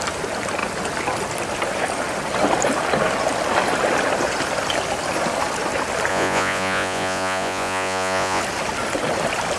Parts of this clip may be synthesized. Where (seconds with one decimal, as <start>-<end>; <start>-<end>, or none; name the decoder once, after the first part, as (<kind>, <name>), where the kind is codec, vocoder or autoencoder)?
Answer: 6.1-8.4 (vocoder, Vocos)